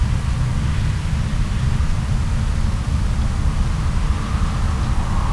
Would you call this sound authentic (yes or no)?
yes